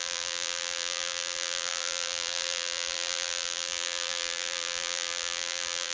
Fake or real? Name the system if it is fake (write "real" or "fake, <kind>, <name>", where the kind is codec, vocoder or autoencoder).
fake, vocoder, BigVGAN v2